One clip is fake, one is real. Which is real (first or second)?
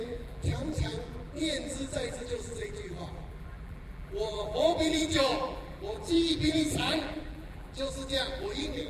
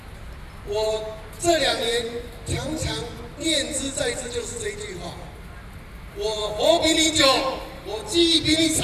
second